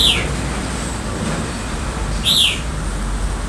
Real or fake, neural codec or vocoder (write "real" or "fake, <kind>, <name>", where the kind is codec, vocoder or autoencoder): real